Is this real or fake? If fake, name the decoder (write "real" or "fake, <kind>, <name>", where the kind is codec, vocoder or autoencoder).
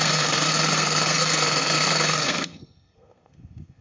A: fake, codec, SNAC